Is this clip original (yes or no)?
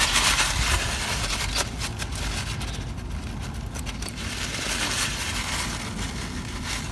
yes